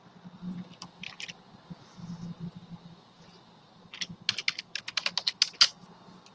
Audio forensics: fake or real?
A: real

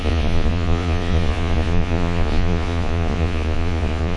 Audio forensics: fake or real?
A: fake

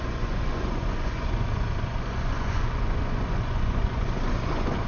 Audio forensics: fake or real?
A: fake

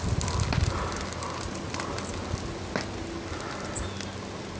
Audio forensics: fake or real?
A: real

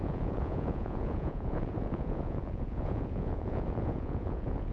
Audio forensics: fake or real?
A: fake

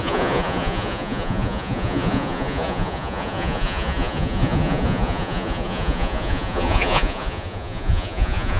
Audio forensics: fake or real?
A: fake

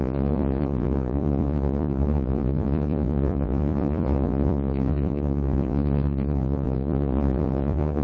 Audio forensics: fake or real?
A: fake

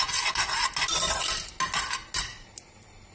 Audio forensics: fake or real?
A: real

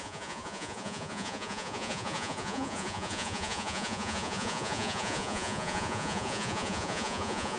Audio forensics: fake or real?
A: fake